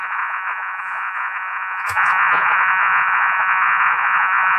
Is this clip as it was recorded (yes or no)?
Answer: no